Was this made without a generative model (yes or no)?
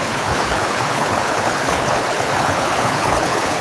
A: no